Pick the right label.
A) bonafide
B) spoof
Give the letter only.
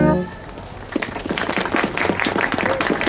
A